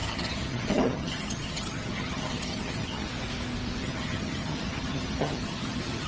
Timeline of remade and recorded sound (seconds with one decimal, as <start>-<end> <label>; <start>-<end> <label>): 0.0-3.1 remade; 3.1-3.8 recorded; 3.8-6.1 remade